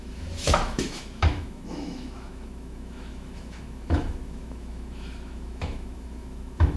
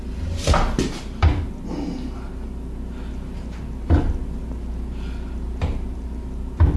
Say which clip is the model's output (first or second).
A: first